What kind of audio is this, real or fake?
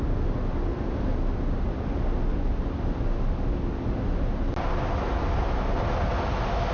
real